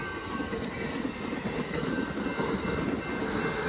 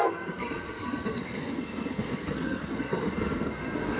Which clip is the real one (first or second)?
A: first